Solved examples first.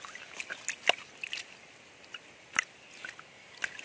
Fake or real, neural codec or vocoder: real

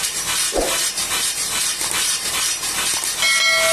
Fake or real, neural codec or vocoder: real